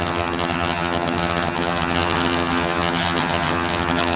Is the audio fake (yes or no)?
yes